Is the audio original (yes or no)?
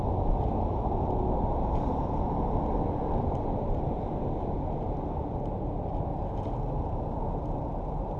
yes